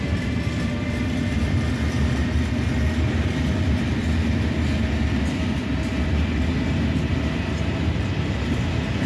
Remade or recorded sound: recorded